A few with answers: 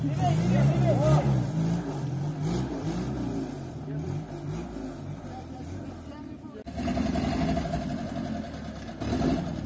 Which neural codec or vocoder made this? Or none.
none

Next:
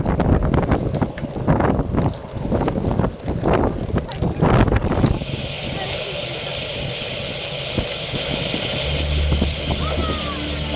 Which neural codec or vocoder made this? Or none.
none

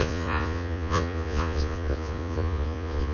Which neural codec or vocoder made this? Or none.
vocoder, Vocos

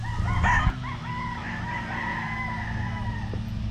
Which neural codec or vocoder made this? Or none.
none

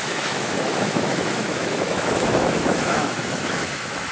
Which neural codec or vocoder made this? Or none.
autoencoder, DAC-VAE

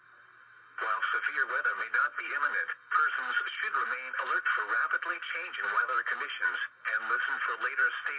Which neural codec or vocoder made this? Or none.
none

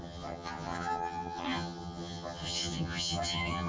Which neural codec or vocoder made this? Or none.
vocoder, HiFi-GAN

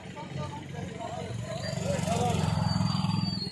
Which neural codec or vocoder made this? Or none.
none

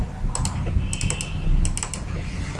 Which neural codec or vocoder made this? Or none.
none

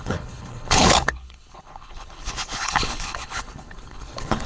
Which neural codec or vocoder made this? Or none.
codec, HILCodec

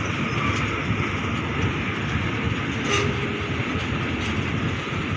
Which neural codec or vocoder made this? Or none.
none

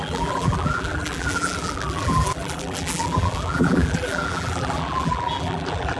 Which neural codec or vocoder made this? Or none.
vocoder, BigVGAN v2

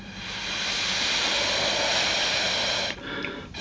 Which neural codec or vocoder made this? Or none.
none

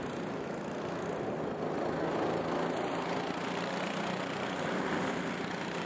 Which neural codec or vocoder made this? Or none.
none